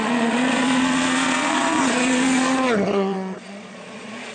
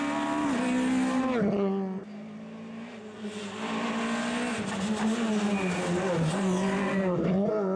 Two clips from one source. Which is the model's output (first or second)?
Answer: first